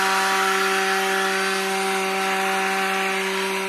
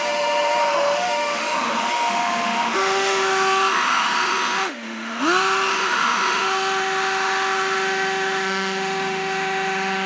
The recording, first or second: first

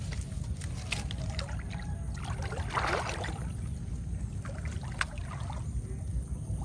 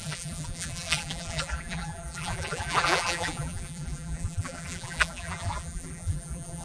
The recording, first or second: first